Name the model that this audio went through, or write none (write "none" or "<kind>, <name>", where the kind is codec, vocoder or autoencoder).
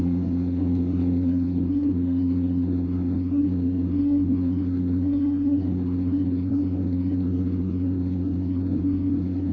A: codec, SNAC